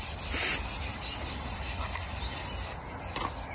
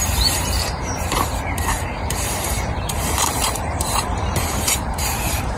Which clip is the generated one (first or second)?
second